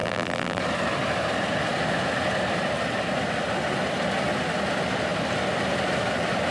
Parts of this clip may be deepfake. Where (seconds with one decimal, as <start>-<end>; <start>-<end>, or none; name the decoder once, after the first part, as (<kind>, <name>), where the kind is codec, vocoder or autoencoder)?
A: 0.0-0.6 (vocoder, BigVGAN v2)